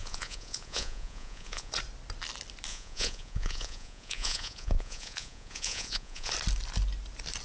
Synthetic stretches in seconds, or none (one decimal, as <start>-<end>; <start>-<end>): 0.0-1.7; 2.7-6.3